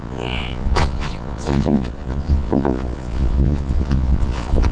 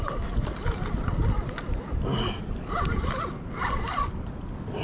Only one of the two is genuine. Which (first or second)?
second